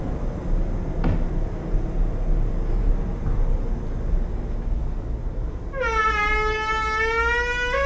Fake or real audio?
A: real